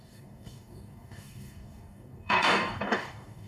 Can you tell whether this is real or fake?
fake